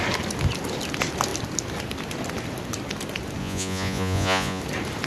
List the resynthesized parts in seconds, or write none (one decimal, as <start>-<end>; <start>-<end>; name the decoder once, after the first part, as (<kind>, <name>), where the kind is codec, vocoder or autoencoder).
3.4-4.6 (vocoder, Vocos)